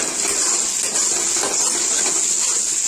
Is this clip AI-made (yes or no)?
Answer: no